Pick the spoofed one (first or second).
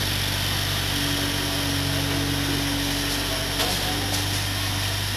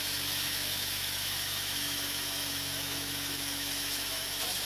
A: second